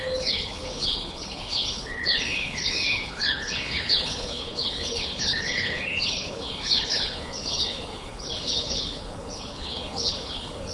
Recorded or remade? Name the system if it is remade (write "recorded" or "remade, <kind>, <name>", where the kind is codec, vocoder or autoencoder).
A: remade, codec, HILCodec